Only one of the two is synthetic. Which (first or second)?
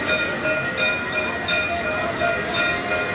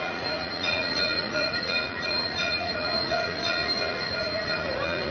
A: second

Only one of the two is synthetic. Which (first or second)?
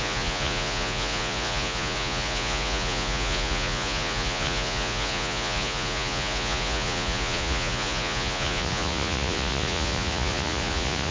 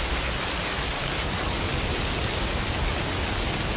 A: first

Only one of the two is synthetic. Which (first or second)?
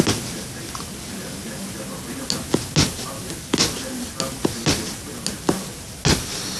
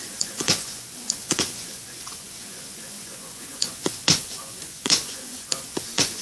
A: second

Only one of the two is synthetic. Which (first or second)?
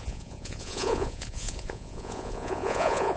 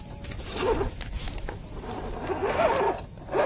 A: first